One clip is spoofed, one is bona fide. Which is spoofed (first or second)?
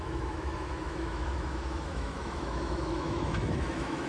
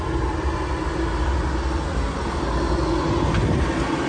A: first